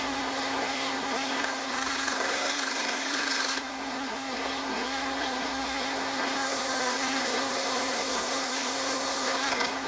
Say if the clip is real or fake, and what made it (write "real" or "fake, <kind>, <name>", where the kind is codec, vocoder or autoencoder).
fake, codec, SNAC